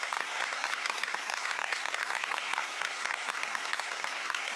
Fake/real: fake